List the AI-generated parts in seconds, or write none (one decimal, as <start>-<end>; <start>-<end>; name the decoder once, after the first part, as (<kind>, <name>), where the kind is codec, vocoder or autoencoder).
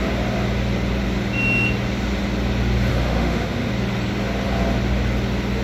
2.9-3.7 (autoencoder, DAC-VAE)